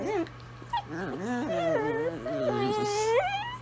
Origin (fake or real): real